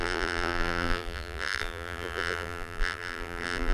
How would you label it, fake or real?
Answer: fake